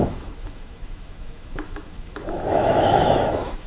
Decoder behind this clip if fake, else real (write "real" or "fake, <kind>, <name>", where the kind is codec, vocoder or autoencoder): fake, autoencoder, DAC-VAE